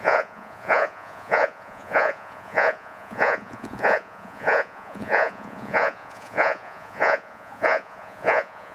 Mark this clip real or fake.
fake